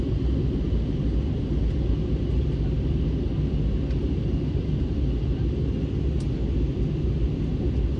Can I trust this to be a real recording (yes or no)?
yes